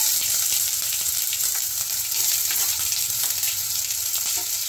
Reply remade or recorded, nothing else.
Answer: remade